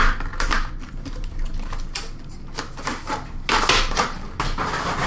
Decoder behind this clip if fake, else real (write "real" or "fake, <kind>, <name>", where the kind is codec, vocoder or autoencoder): real